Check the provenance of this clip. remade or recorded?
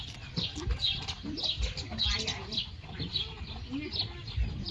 recorded